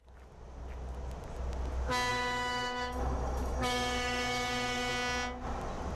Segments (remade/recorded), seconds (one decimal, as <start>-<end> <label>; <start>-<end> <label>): 0.0-2.1 recorded; 2.1-4.9 remade; 4.9-5.9 recorded